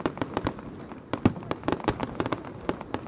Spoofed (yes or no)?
no